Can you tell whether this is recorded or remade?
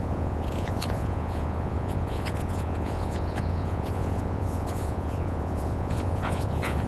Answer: remade